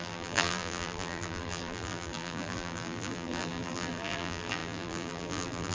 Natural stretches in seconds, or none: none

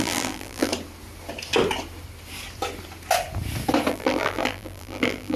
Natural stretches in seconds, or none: 0.7-3.9